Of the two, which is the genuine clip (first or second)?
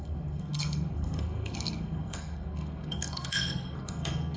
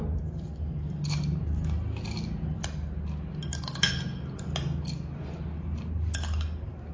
second